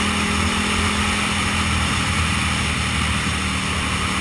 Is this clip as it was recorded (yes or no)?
yes